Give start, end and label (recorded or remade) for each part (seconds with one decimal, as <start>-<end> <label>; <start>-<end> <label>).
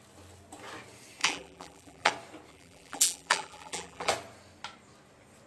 0.0-1.2 recorded; 1.2-2.1 remade; 2.1-2.5 recorded; 2.5-4.1 remade; 4.1-5.5 recorded